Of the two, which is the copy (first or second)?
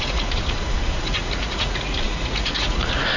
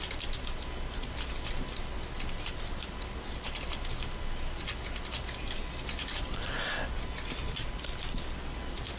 first